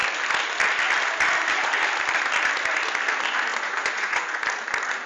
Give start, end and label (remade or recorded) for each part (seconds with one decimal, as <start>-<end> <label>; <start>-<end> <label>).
0.0-3.5 recorded; 3.5-4.4 remade; 4.4-5.1 recorded